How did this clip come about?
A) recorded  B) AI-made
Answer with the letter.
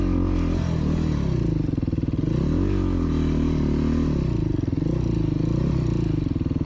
A